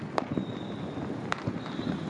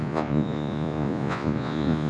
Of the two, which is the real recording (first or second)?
first